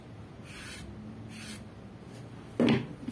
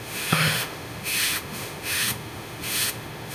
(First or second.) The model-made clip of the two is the second